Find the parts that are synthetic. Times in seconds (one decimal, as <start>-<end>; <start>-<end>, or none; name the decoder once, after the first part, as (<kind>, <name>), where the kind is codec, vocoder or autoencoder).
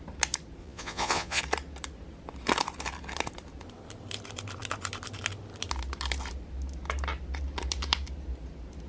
0.6-1.4 (vocoder, Vocos)